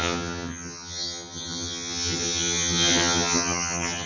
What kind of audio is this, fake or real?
fake